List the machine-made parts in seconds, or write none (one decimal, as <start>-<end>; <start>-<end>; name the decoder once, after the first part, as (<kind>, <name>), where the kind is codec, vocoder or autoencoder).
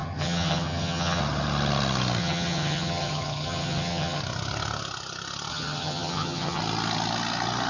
0.0-1.2 (vocoder, HiFi-GAN); 2.2-4.2; 5.5-6.6